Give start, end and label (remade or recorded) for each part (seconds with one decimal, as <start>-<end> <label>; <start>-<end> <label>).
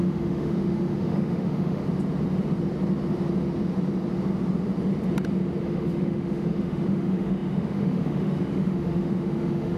0.0-1.8 remade; 1.8-5.6 recorded; 5.6-9.8 remade